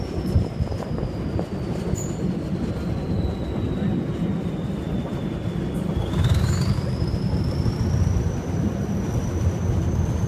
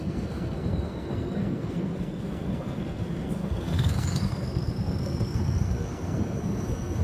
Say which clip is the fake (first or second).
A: second